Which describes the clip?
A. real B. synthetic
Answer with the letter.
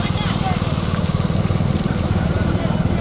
A